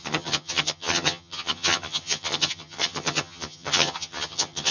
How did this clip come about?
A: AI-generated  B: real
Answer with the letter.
A